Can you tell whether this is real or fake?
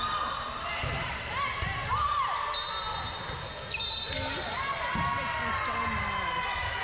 real